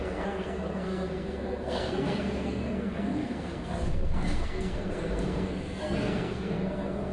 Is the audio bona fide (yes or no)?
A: no